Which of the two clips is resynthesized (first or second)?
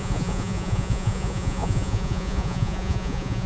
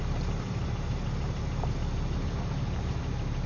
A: first